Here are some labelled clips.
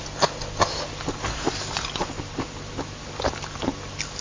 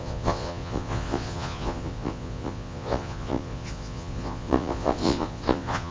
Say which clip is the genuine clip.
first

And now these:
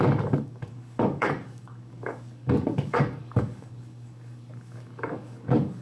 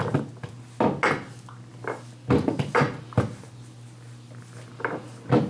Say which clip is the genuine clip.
second